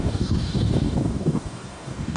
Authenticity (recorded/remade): remade